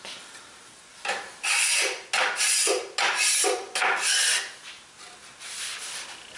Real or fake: real